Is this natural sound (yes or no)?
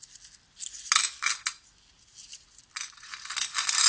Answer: yes